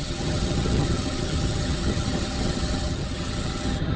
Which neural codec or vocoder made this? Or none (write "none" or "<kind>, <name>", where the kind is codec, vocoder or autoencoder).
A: vocoder, HiFi-GAN